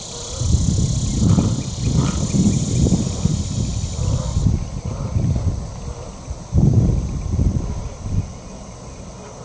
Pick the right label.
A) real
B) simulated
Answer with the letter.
B